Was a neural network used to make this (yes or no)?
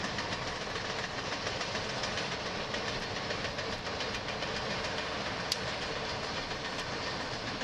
no